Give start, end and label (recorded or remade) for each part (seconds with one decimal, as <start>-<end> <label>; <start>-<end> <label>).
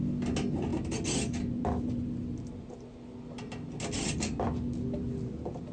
0.0-5.7 recorded